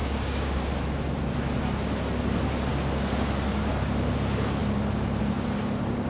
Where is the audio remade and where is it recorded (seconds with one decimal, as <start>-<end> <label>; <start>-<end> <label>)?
0.0-0.6 remade; 0.6-6.1 recorded